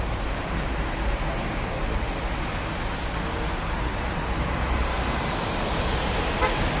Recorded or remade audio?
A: recorded